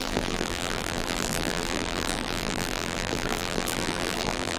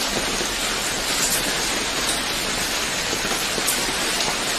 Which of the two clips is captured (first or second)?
second